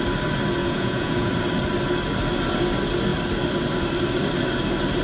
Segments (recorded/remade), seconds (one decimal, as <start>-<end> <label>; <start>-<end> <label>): 0.0-0.6 recorded; 0.6-1.3 remade; 1.3-5.0 recorded